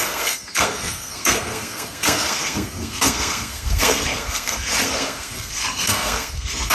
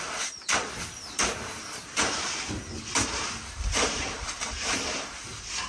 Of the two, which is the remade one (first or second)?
first